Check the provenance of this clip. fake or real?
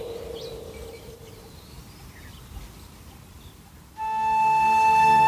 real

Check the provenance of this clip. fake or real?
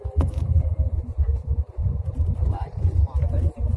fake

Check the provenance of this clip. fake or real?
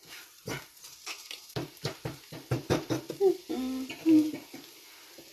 fake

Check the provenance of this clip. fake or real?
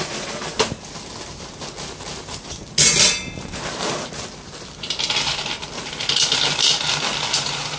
real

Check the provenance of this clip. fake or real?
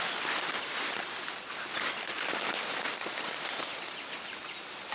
fake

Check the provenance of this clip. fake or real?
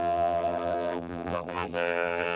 fake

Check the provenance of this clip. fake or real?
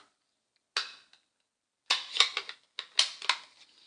real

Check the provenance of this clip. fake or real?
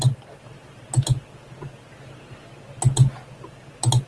real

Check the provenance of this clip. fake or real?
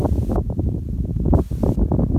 real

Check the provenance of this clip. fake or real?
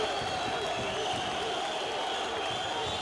real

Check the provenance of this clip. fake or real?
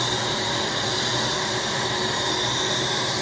real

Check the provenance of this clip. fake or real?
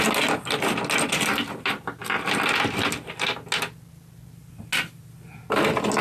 real